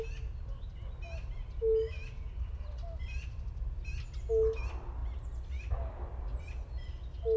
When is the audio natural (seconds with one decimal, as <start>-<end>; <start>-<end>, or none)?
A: 0.0-7.4